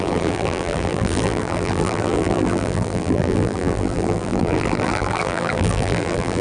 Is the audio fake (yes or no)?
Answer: yes